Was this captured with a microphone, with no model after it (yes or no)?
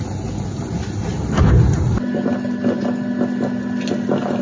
yes